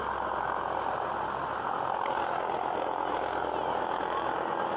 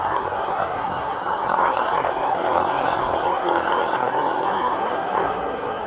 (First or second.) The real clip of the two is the first